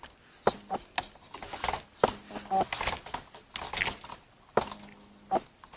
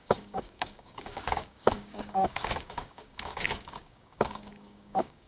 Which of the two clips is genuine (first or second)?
first